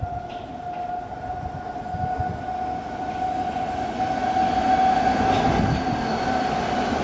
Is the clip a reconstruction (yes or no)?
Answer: no